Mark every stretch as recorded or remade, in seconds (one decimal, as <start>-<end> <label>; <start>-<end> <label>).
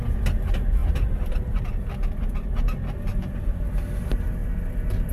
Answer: 0.0-0.8 recorded; 0.8-1.6 remade; 1.6-3.1 recorded; 3.1-3.6 remade; 3.6-5.1 recorded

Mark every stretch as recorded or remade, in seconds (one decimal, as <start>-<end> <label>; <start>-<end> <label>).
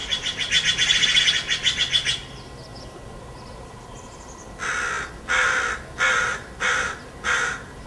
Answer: 0.0-7.9 recorded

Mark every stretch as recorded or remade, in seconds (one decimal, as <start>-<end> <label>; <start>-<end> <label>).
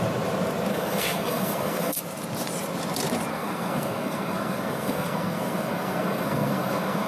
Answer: 0.0-0.7 recorded; 0.7-2.0 remade; 2.0-3.3 recorded; 3.3-7.1 remade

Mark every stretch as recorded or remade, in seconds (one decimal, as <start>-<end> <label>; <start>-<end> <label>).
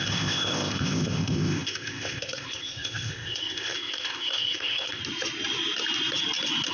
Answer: 0.0-5.0 remade; 5.0-6.7 recorded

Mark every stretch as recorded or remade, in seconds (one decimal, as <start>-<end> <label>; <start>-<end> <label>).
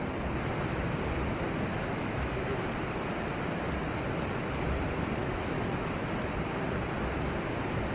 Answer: 0.0-1.7 recorded; 1.7-2.7 remade; 2.7-5.2 recorded; 5.2-5.9 remade; 5.9-7.9 recorded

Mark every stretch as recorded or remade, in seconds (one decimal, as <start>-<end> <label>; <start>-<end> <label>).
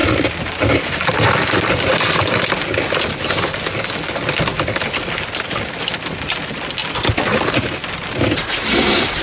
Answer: 0.0-9.2 recorded